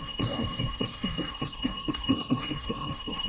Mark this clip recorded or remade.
remade